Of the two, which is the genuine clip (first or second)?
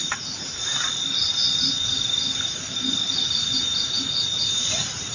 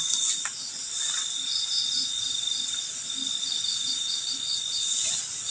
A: second